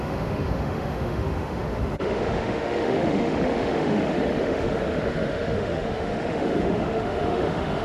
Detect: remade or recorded remade